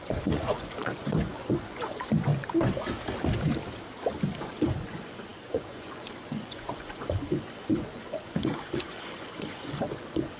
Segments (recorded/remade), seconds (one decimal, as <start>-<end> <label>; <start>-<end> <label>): 0.0-2.3 remade; 2.3-4.4 recorded; 4.4-10.4 remade